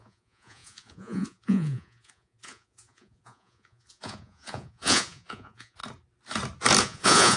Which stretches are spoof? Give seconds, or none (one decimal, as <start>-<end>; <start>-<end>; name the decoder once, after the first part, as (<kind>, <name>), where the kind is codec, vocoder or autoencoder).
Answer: 0.0-5.8 (vocoder, Vocos); 6.8-7.4